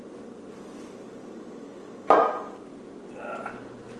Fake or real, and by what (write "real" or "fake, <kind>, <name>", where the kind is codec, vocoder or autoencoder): real